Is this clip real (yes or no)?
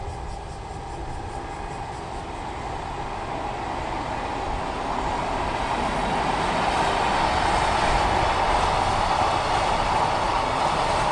yes